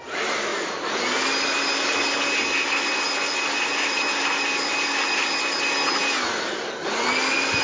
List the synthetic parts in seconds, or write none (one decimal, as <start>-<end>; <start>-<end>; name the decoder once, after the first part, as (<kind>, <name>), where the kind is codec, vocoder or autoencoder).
none